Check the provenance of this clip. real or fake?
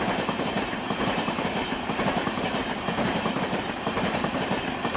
fake